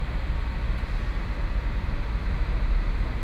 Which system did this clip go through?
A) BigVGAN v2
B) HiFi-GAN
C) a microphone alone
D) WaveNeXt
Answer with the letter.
C